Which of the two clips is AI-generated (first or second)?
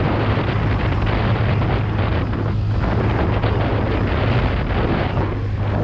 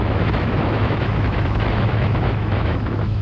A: second